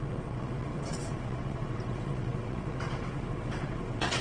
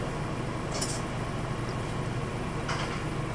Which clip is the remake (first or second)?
first